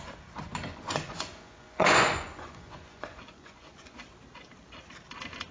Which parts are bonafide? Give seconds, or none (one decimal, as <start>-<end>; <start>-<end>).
0.0-0.7; 4.0-5.5